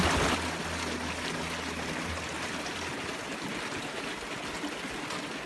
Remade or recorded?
recorded